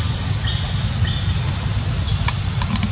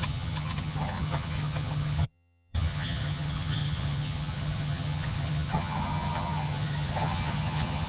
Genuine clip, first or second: first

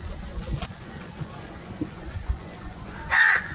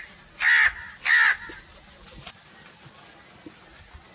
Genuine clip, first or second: second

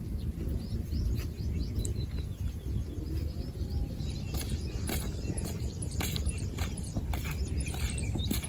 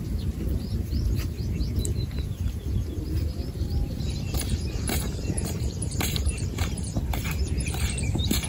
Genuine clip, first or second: first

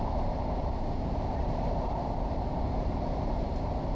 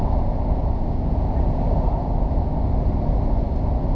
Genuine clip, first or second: second